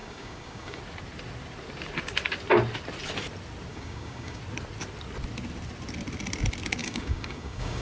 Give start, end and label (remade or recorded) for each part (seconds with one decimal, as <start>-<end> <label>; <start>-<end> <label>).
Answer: 0.0-0.8 remade; 0.8-3.7 recorded; 3.7-4.4 remade; 4.4-6.8 recorded; 6.8-7.8 remade